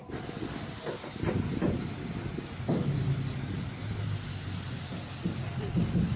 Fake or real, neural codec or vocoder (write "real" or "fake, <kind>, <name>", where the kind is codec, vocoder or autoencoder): real